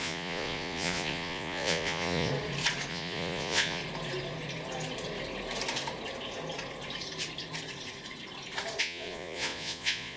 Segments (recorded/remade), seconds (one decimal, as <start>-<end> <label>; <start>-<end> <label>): 0.0-2.3 remade; 2.3-2.9 recorded; 2.9-3.8 remade; 3.8-8.8 recorded; 8.8-10.2 remade